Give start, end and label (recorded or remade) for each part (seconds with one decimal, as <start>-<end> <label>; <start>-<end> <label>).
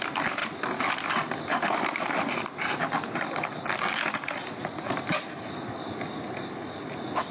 0.0-4.4 recorded; 4.4-4.9 remade; 4.9-7.3 recorded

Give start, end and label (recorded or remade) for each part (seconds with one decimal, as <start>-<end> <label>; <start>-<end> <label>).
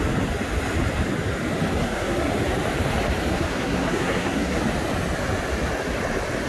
0.0-1.8 recorded; 1.8-2.3 remade; 2.3-3.3 recorded; 3.3-4.6 remade; 4.6-6.5 recorded